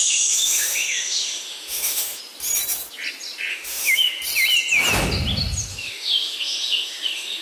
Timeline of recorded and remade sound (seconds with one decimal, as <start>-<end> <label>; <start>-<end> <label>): 0.0-2.2 remade; 2.2-3.5 recorded; 3.5-4.2 remade; 4.2-5.7 recorded; 5.7-7.4 remade